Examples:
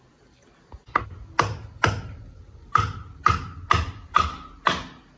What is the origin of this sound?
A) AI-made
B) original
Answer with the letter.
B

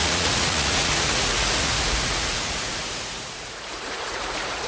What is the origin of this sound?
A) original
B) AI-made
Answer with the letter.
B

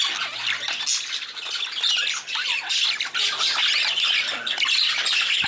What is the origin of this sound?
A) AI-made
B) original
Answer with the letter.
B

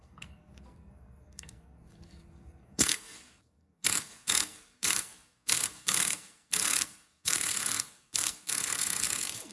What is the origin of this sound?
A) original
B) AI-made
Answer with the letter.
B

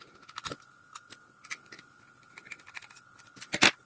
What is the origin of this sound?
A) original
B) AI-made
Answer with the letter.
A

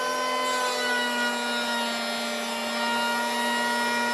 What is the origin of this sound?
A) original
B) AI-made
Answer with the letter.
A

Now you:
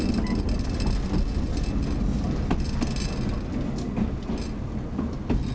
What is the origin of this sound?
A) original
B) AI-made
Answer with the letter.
A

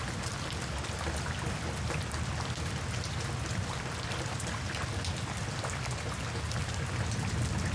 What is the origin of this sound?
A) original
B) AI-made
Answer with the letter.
A